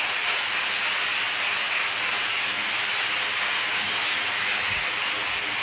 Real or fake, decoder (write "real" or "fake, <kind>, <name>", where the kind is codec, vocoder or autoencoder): real